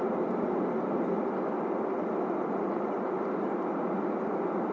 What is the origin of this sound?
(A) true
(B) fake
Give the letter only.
A